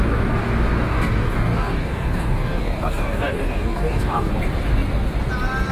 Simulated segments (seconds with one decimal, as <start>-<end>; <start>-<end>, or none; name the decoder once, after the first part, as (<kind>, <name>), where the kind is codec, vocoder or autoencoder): 0.9-4.3 (codec, DAC)